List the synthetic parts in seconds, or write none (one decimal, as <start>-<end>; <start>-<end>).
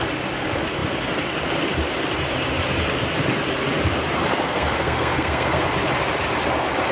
4.3-5.7